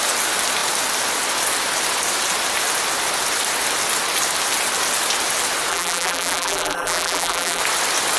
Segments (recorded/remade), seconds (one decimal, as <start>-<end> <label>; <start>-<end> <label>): 0.0-5.7 recorded; 5.7-7.6 remade; 7.6-8.2 recorded